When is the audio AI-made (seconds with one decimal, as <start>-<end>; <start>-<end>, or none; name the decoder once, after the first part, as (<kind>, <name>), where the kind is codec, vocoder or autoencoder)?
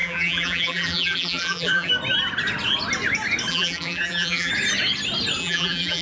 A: 0.0-1.9 (vocoder, BigVGAN v2); 3.5-4.5; 5.4-6.0